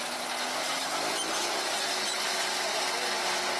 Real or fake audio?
real